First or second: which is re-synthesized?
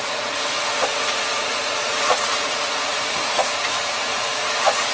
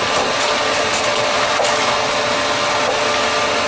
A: first